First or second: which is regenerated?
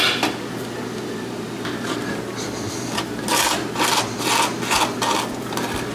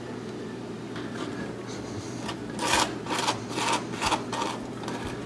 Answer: second